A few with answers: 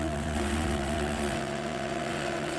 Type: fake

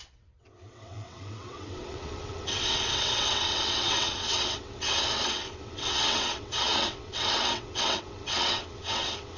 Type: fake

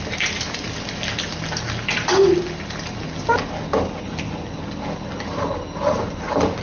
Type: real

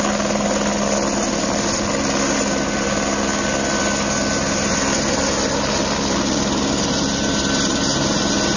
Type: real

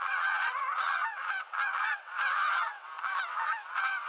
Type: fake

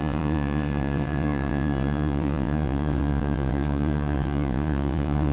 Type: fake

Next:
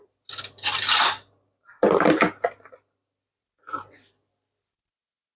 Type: real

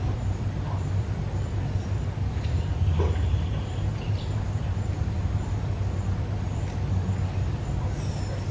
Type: real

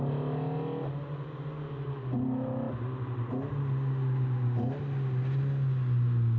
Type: real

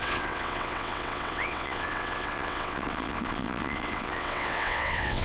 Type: fake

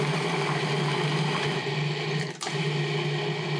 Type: real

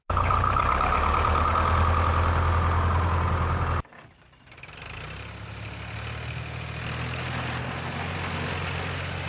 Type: real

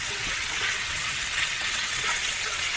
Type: fake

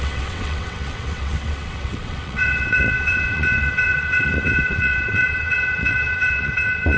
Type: fake